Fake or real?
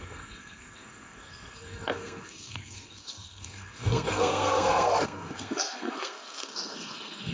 fake